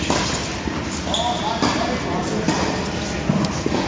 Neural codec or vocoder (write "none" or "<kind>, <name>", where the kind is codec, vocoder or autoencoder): none